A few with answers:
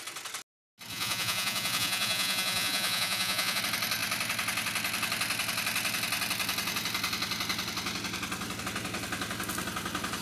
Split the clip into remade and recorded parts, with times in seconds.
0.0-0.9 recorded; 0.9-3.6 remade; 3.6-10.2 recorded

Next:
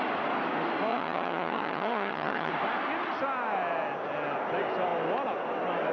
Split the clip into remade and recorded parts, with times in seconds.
0.0-0.9 recorded; 0.9-2.5 remade; 2.5-5.9 recorded

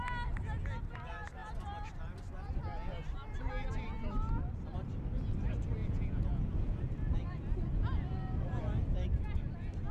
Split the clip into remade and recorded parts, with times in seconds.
0.0-5.8 recorded; 5.8-6.8 remade; 6.8-9.9 recorded